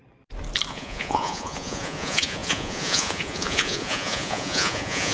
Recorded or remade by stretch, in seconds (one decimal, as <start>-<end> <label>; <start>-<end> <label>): 0.0-0.7 recorded; 0.7-5.1 remade